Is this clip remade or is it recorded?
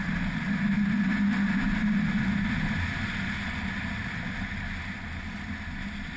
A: recorded